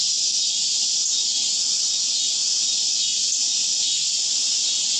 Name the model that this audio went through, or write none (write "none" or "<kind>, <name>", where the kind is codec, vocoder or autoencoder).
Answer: none